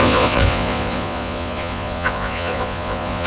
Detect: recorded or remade remade